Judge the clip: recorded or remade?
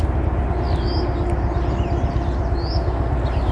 recorded